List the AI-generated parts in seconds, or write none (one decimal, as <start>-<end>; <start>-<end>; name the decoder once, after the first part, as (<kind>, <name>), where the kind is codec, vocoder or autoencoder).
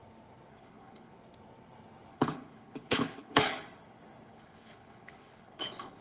0.5-1.1 (codec, HILCodec); 2.1-6.0